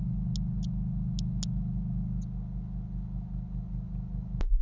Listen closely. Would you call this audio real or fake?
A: real